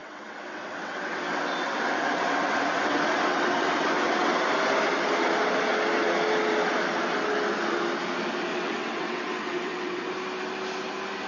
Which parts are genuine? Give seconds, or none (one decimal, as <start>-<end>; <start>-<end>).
4.4-8.5; 10.1-11.3